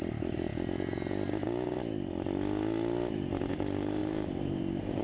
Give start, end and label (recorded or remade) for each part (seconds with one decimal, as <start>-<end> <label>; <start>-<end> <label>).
0.0-0.5 remade; 0.5-3.5 recorded; 3.5-5.0 remade